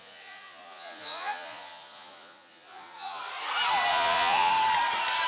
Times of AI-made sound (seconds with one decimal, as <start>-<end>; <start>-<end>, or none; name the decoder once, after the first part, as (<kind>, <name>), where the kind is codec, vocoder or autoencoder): 0.0-3.2 (vocoder, Vocos); 3.9-4.5